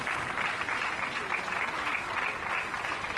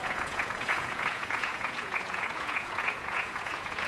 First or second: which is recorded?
first